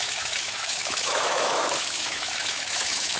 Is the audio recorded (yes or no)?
no